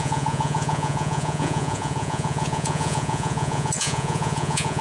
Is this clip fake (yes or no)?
yes